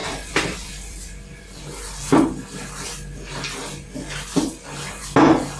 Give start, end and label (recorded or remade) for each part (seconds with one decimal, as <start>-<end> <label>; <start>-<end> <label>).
0.0-1.7 remade; 1.7-5.6 recorded